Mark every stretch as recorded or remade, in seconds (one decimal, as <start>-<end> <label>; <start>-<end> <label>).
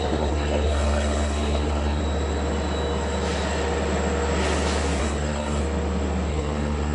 0.0-2.0 remade; 2.0-5.0 recorded; 5.0-5.6 remade; 5.6-6.3 recorded; 6.3-6.9 remade